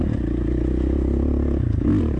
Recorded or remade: recorded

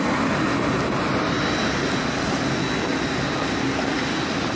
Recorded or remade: recorded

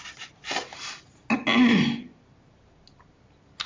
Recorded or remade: recorded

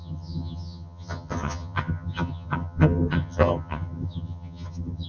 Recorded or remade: remade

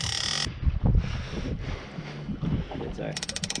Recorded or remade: recorded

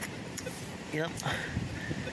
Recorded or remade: remade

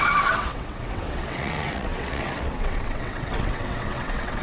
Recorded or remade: remade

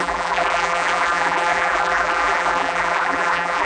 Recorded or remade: remade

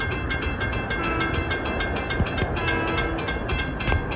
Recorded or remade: recorded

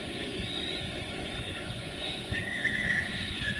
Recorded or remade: remade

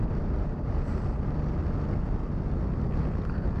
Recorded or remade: recorded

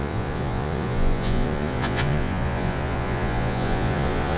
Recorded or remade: remade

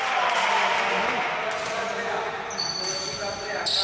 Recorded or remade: recorded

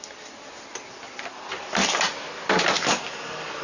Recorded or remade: recorded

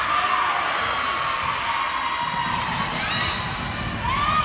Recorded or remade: recorded